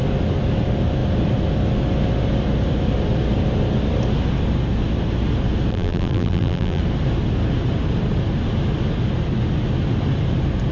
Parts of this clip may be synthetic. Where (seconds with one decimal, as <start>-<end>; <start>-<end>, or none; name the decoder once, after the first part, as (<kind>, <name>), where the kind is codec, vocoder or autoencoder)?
5.7-6.8 (vocoder, BigVGAN v2)